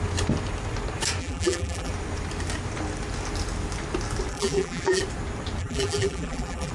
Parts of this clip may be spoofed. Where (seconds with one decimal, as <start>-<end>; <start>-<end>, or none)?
1.2-1.9; 4.3-5.0; 5.6-6.7